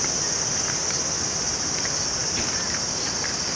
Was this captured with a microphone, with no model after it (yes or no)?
yes